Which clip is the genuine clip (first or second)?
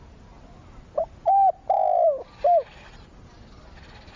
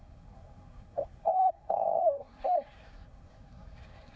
first